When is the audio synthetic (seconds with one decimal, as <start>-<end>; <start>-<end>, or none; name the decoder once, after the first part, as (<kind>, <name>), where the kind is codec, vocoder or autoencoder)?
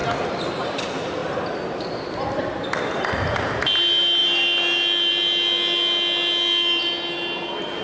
none